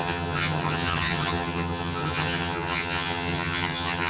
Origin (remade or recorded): remade